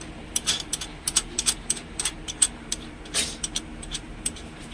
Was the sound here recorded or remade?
remade